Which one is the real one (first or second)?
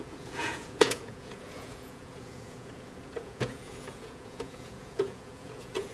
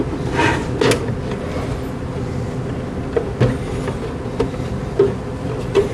second